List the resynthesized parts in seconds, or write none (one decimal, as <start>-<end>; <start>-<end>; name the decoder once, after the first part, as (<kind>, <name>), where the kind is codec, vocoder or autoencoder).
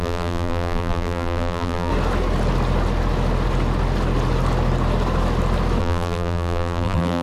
0.0-1.9 (vocoder, BigVGAN v2); 5.8-7.2